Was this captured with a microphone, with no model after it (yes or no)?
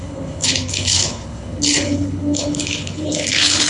no